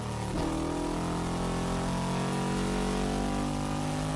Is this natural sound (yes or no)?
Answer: yes